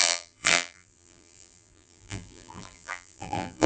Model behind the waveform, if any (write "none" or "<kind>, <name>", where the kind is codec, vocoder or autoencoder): vocoder, BigVGAN v2